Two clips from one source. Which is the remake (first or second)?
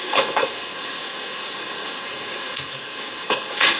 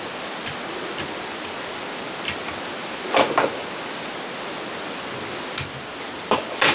first